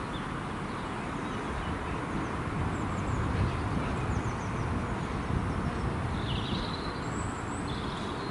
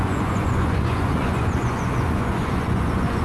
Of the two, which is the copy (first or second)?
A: second